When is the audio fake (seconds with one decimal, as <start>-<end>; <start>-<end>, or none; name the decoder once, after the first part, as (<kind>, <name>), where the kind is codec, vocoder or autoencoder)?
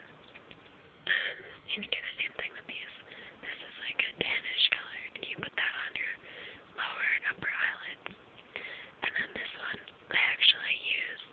0.8-2.2 (codec, SNAC)